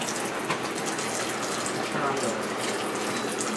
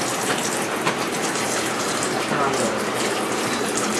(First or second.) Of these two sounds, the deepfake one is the second